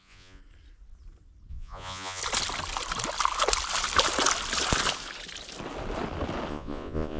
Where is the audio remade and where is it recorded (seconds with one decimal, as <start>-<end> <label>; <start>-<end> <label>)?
0.0-0.4 remade; 0.4-1.5 recorded; 1.5-2.2 remade; 2.2-6.5 recorded; 6.5-7.2 remade

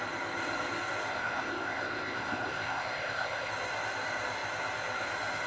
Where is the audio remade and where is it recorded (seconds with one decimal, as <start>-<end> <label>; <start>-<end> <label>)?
0.0-1.1 recorded; 1.1-3.5 remade; 3.5-5.5 recorded